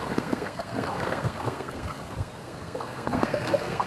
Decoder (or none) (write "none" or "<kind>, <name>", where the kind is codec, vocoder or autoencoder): codec, SNAC